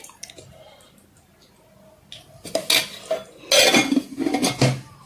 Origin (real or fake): real